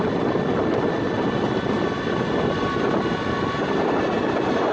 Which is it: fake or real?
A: real